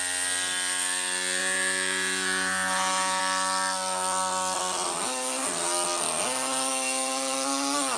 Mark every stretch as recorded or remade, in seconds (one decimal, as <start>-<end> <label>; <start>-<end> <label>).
0.0-1.4 recorded; 1.4-3.2 remade; 3.2-8.0 recorded